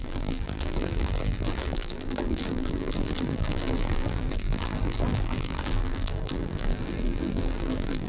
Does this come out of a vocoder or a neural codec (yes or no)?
yes